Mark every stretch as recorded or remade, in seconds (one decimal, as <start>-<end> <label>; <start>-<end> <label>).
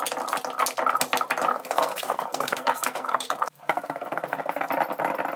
0.0-1.5 recorded; 1.5-4.7 remade; 4.7-5.4 recorded